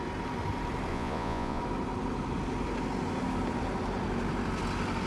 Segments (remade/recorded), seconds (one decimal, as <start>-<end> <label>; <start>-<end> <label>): 0.0-0.9 recorded; 0.9-1.6 remade; 1.6-5.1 recorded